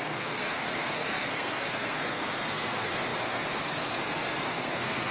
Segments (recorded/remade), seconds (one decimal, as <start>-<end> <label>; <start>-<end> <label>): 0.0-5.1 remade